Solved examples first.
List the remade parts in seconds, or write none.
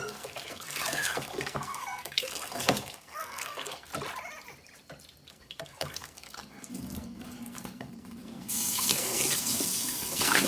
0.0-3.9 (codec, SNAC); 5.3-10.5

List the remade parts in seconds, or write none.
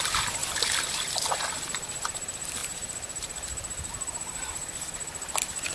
0.0-5.7 (vocoder, BigVGAN v2)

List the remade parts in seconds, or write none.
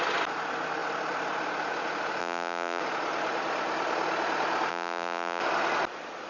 2.2-2.8 (vocoder, BigVGAN v2); 4.7-5.4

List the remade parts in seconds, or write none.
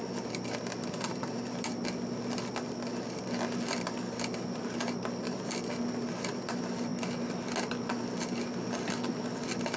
none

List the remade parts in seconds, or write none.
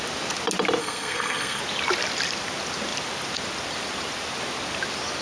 0.8-1.6 (codec, SNAC)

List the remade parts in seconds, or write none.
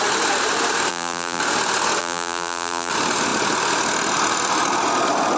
0.9-1.4 (vocoder, BigVGAN v2); 2.0-2.9